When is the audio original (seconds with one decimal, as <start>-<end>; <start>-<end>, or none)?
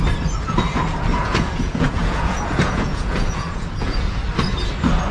0.0-1.1; 4.2-5.1